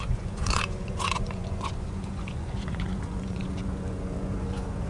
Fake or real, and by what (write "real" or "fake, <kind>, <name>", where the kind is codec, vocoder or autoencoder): fake, vocoder, Vocos